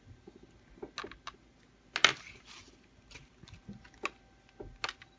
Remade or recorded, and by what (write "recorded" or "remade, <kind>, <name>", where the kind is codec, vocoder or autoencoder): recorded